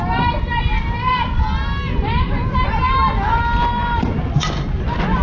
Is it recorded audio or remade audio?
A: recorded